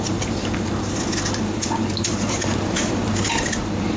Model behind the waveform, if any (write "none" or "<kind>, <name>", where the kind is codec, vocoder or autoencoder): vocoder, BigVGAN v2